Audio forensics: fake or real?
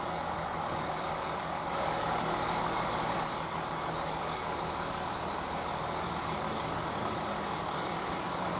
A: fake